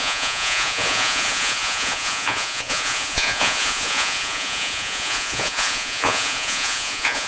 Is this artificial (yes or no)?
yes